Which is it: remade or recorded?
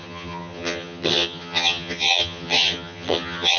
remade